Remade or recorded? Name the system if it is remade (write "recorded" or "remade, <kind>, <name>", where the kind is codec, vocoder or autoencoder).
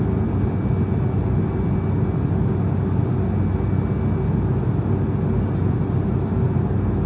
recorded